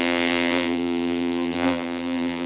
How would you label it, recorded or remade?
remade